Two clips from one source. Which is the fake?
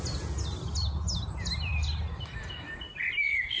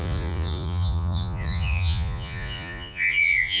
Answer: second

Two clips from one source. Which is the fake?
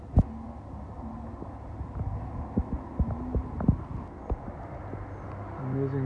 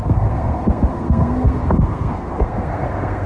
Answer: second